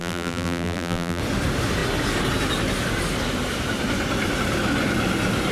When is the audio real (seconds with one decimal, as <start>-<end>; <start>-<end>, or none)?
1.2-5.5